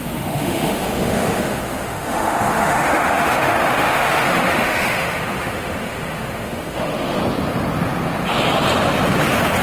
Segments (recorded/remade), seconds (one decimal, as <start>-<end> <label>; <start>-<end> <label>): 0.0-7.2 remade; 7.2-9.6 recorded